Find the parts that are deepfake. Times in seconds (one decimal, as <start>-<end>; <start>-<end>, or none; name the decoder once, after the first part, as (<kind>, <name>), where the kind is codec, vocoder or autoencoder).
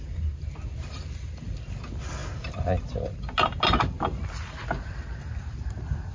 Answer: none